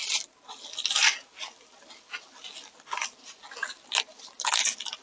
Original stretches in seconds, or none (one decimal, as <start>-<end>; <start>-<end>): 0.0-5.0